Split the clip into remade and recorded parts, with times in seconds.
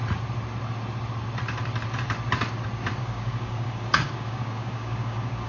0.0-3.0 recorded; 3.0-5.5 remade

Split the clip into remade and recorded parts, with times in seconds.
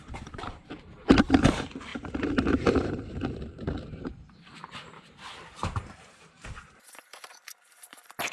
0.0-8.3 remade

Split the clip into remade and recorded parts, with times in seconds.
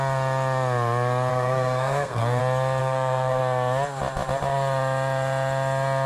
0.0-1.3 recorded; 1.3-2.4 remade; 2.4-2.8 recorded; 2.8-3.4 remade; 3.4-6.1 recorded